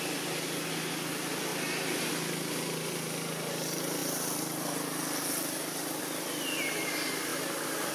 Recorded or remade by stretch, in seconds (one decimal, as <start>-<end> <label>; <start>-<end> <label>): 0.0-7.9 recorded